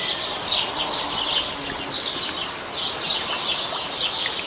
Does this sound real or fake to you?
real